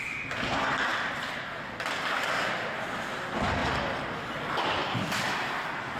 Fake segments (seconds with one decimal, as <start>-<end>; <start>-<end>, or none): 0.9-1.5; 3.6-4.1; 4.8-5.3